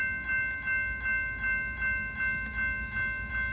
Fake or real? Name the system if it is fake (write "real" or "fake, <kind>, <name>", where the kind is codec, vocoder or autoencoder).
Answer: real